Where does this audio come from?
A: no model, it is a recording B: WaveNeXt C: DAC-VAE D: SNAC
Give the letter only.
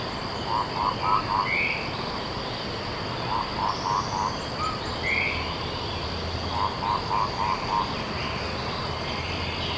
A